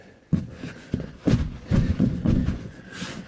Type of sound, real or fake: fake